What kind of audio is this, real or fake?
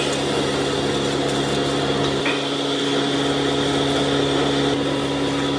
real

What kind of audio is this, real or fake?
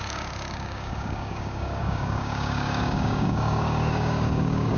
fake